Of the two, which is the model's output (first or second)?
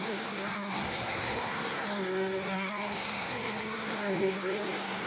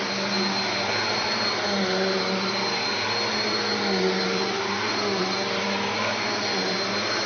first